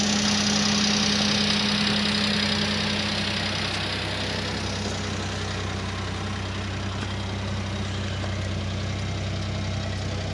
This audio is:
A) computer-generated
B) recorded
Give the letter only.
B